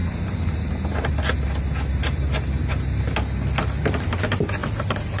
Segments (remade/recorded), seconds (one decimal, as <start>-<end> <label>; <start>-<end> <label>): 0.0-1.1 remade; 1.1-4.6 recorded; 4.6-5.2 remade

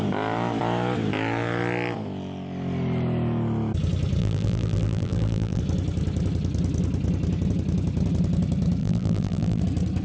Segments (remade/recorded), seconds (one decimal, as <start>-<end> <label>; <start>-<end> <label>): 0.0-4.2 recorded; 4.2-5.6 remade; 5.6-8.8 recorded; 8.8-9.6 remade; 9.6-10.0 recorded

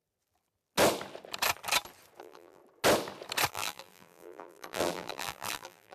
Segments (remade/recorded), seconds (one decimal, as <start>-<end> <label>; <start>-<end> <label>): 0.0-2.2 recorded; 2.2-2.6 remade; 2.6-3.5 recorded; 3.5-5.9 remade

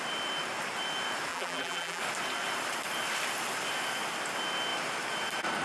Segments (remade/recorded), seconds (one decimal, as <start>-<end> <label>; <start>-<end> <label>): 0.0-1.3 recorded; 1.3-2.0 remade; 2.0-5.6 recorded

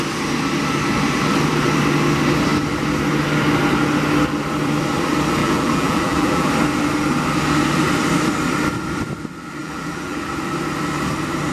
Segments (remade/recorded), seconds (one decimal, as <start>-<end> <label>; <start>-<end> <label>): 0.0-5.4 recorded; 5.4-6.5 remade; 6.5-9.6 recorded; 9.6-10.2 remade; 10.2-11.5 recorded

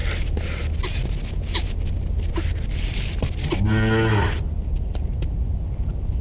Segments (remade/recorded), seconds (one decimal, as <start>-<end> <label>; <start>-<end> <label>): 0.0-6.2 recorded